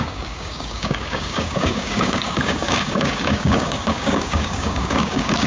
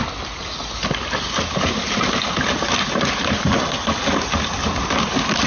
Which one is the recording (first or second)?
second